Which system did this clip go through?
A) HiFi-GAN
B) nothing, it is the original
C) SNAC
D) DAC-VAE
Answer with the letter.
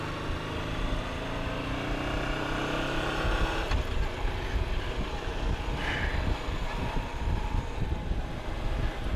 B